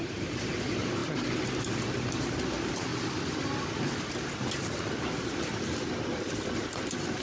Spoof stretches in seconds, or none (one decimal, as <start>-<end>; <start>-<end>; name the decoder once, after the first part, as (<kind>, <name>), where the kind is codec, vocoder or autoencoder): 0.0-1.0 (vocoder, BigVGAN v2); 2.2-2.9; 3.6-7.2